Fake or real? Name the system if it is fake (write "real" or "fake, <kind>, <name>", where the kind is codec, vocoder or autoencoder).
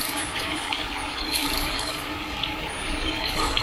fake, codec, DAC